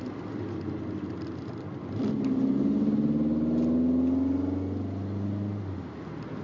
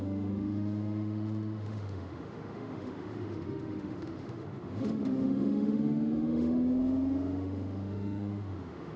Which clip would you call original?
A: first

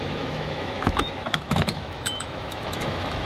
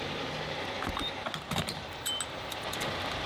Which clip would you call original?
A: second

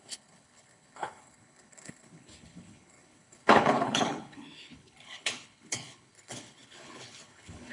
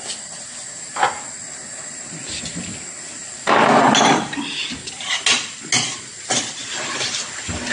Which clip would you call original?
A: second